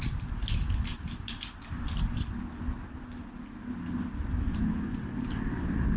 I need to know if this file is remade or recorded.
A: recorded